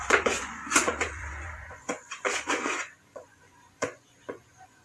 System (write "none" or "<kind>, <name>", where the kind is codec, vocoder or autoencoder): vocoder, Vocos